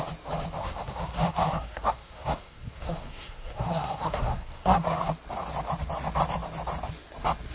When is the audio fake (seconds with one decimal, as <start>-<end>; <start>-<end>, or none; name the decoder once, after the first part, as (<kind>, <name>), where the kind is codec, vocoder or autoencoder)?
0.6-5.1 (codec, SNAC)